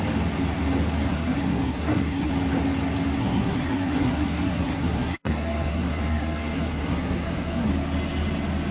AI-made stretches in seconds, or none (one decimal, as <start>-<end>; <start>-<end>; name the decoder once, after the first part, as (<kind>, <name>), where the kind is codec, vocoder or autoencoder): 1.1-2.3 (codec, SNAC); 3.2-7.7